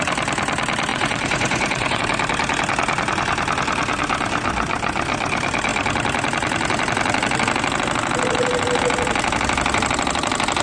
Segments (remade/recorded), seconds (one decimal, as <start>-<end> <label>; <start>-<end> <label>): 0.0-0.9 recorded; 0.9-2.0 remade; 2.0-10.6 recorded